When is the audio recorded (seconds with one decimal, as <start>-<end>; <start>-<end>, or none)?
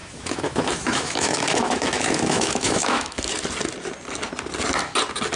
3.2-5.4